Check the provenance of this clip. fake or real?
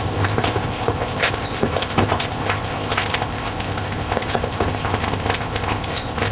fake